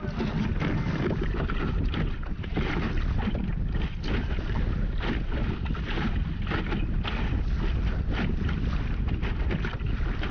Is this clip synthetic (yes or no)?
no